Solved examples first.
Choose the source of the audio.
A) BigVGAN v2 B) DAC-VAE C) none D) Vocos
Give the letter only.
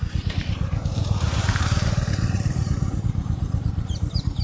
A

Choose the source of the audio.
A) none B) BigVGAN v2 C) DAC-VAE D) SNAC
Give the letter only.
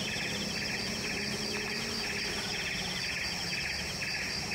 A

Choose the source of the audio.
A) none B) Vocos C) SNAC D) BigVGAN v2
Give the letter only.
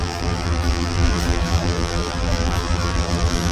D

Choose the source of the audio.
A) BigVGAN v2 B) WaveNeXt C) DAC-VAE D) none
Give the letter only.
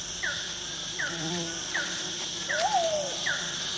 A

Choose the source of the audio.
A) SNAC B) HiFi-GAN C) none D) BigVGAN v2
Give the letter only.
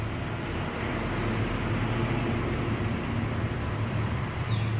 C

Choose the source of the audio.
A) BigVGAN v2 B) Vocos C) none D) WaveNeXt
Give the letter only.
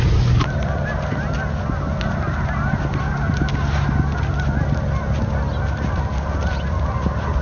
C